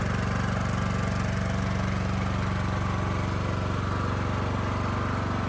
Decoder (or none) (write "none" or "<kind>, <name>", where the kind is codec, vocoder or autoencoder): none